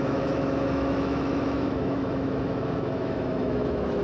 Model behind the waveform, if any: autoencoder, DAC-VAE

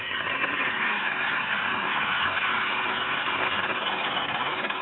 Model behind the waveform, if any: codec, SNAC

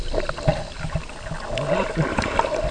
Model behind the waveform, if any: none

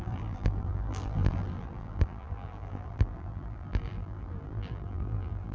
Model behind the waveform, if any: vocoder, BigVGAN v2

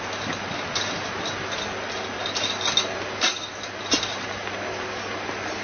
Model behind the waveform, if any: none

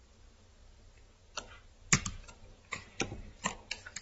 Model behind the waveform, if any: none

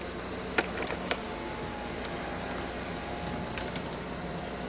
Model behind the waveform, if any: none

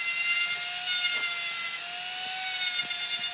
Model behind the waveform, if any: none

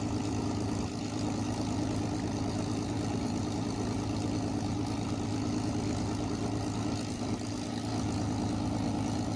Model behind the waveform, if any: none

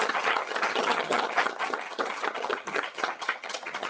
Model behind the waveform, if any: vocoder, HiFi-GAN